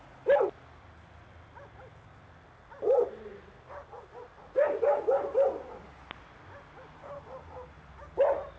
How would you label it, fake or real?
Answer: real